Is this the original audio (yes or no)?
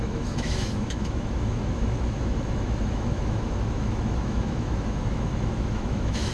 no